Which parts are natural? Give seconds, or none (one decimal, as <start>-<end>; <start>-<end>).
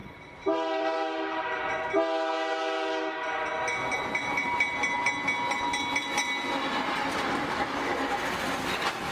1.6-9.1